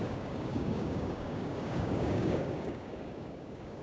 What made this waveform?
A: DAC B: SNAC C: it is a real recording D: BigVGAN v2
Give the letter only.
A